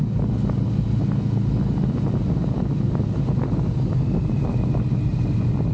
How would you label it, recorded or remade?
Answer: recorded